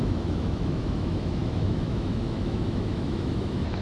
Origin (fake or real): fake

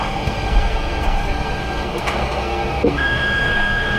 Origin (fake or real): fake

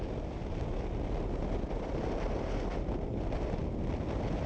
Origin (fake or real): real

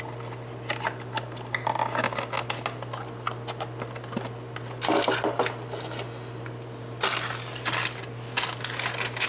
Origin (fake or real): real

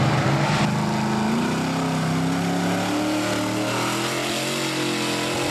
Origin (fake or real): real